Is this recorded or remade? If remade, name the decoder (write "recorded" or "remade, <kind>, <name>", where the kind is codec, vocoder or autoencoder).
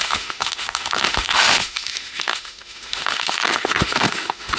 remade, autoencoder, DAC-VAE